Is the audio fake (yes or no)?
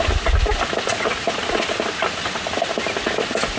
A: no